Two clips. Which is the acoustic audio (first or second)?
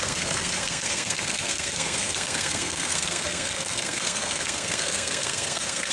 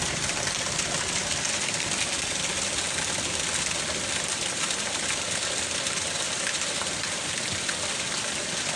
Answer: second